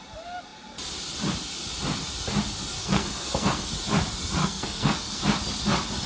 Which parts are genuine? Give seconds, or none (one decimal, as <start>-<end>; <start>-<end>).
0.0-2.8; 3.7-4.4; 5.2-6.1